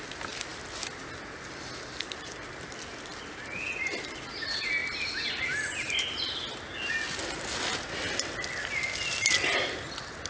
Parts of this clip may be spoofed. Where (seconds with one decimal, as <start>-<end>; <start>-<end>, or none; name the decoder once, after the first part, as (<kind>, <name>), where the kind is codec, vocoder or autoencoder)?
none